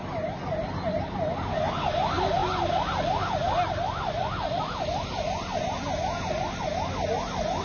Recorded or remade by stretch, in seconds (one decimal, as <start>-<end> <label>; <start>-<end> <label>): 0.0-7.6 recorded